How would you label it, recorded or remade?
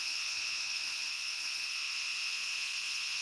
remade